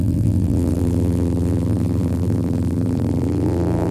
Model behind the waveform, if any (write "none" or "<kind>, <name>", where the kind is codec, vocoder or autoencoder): vocoder, BigVGAN v2